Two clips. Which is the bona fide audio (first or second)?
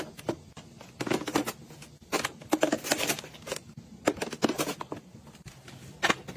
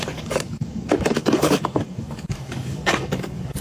first